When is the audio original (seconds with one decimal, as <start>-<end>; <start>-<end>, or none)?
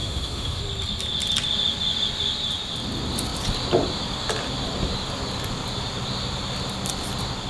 0.6-7.5